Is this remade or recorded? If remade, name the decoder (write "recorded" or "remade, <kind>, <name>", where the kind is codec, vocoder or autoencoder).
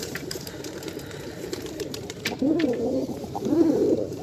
remade, vocoder, BigVGAN v2